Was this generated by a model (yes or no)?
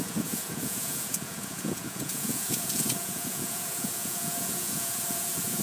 yes